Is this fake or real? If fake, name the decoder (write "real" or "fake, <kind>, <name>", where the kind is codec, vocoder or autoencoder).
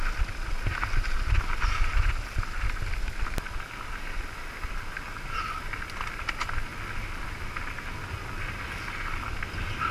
real